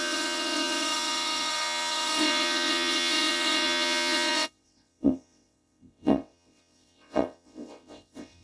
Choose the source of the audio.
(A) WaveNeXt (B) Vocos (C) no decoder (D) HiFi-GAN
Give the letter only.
A